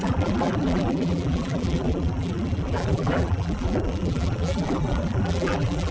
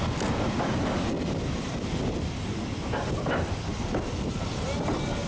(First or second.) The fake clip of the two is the first